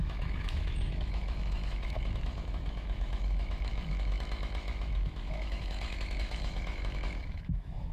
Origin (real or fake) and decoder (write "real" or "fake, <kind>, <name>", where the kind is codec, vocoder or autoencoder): fake, autoencoder, DAC-VAE